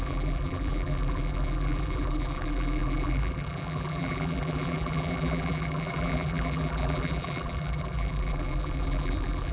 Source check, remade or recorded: remade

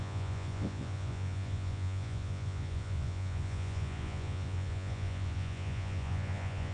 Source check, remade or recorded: remade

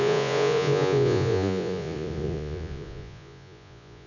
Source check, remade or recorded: remade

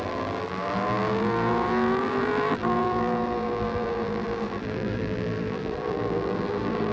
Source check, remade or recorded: remade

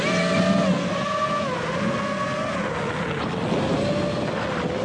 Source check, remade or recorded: recorded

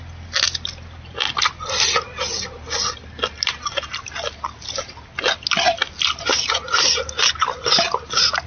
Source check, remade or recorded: recorded